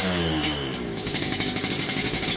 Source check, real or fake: fake